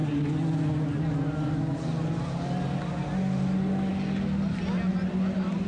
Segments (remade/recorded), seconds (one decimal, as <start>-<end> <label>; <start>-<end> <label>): 0.0-5.7 recorded